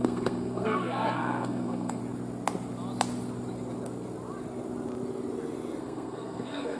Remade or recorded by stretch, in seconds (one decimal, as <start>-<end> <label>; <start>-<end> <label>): 0.0-2.0 remade; 2.0-5.8 recorded; 5.8-6.8 remade